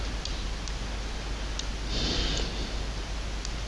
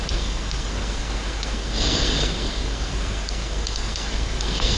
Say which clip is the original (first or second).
first